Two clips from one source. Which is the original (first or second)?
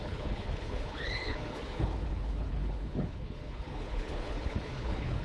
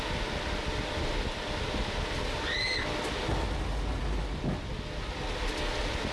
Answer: second